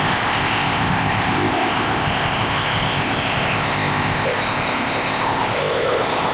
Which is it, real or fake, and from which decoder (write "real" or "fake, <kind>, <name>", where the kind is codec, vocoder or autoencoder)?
fake, codec, ZipCodec